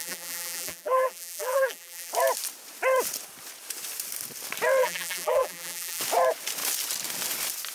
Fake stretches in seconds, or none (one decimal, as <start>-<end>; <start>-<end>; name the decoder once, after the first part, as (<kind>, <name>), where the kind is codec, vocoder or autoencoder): 0.0-2.1 (vocoder, BigVGAN v2); 4.8-6.0